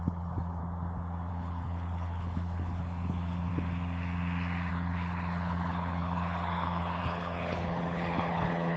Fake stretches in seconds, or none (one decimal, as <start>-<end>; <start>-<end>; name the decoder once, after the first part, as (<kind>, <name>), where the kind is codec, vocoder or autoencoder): 0.0-0.6 (codec, HILCodec); 1.3-3.5; 4.7-8.8